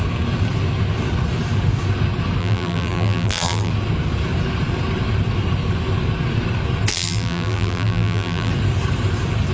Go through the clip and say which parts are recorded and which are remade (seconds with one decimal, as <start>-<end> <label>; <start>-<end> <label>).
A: 0.0-2.4 recorded; 2.4-3.7 remade; 3.7-6.9 recorded; 6.9-8.5 remade; 8.5-9.5 recorded